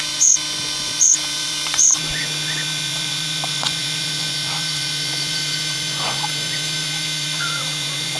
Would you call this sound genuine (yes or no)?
no